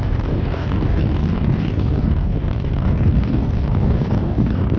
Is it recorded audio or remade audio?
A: remade